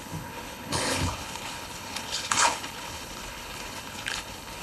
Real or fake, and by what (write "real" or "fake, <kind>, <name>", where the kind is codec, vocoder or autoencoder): fake, codec, HILCodec